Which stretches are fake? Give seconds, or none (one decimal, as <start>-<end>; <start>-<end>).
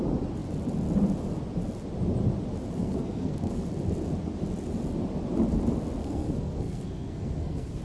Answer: 2.8-3.7; 6.0-7.8